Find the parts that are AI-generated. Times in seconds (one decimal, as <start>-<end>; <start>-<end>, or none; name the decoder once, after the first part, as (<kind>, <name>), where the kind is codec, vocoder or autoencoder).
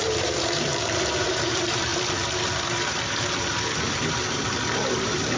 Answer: 0.0-1.9 (vocoder, BigVGAN v2); 4.9-5.4